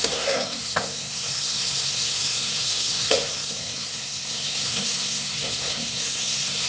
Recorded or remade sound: remade